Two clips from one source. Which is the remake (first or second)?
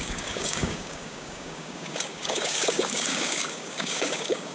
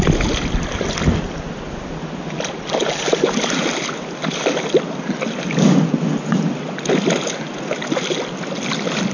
first